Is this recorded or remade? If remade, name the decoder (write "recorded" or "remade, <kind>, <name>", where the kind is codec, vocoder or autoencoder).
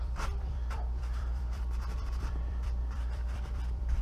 remade, vocoder, BigVGAN v2